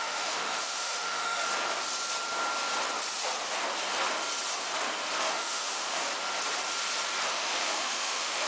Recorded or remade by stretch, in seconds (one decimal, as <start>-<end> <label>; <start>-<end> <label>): 0.0-1.5 remade; 1.5-5.2 recorded; 5.2-6.1 remade; 6.1-7.3 recorded; 7.3-8.5 remade